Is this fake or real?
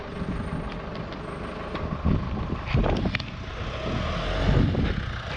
real